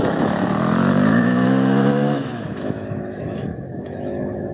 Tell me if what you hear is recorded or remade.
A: remade